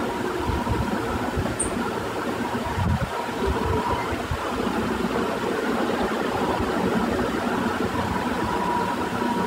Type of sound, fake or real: real